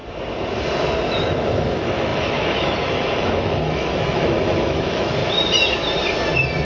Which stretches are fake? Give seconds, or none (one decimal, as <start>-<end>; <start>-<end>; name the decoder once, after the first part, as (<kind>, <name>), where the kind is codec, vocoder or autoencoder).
1.2-5.2 (autoencoder, DAC-VAE)